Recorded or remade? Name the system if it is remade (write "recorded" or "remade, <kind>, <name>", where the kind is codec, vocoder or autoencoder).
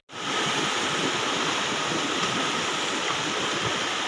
recorded